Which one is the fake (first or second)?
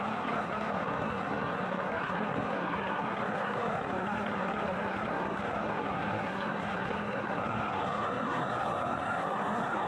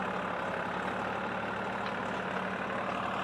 first